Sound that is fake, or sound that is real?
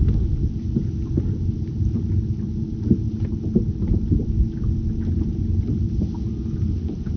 real